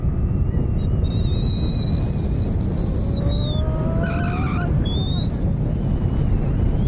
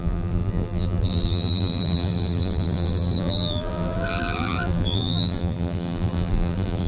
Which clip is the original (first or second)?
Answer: first